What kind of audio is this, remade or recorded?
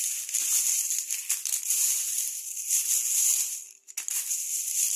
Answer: recorded